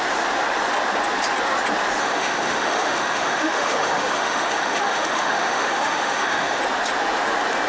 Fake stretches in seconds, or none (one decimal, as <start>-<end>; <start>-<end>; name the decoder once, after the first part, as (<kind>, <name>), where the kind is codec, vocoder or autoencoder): 2.0-6.6 (autoencoder, DAC-VAE)